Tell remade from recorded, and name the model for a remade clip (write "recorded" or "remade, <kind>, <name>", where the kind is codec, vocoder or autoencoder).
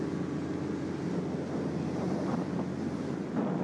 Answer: recorded